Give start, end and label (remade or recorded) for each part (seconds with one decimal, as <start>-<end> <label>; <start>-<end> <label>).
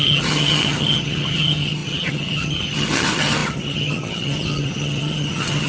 0.0-5.7 remade